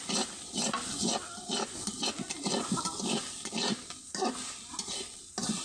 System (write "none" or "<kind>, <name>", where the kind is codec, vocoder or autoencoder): none